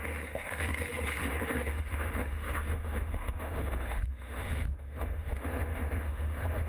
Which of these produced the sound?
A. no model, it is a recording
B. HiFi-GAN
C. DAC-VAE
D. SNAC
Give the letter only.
C